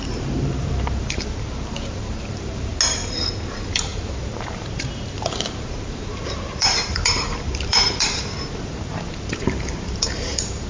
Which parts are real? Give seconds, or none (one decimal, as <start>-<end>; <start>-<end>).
2.7-3.5